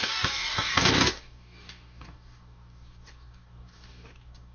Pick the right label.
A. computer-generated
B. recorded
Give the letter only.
A